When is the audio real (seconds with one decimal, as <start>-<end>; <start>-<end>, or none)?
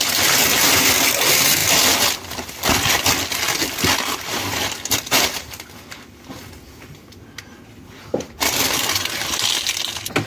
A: 0.0-10.3